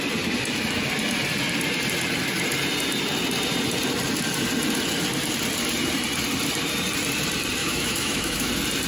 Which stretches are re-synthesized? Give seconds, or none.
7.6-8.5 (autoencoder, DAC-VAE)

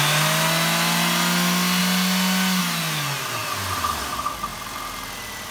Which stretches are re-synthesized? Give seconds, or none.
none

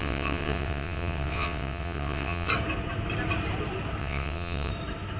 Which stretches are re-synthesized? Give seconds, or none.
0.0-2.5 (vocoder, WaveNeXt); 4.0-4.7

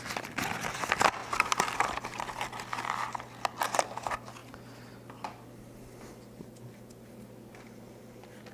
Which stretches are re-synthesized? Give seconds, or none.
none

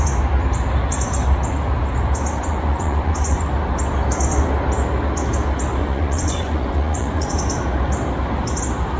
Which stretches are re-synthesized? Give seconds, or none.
2.4-3.5 (vocoder, Vocos); 5.8-7.4